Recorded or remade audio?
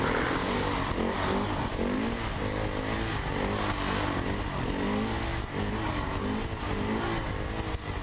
recorded